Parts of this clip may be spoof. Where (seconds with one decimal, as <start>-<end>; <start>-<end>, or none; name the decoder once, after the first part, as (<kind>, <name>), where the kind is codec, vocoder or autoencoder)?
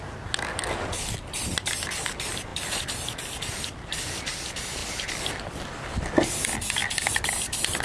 none